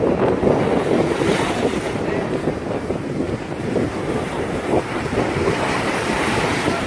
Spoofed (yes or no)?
yes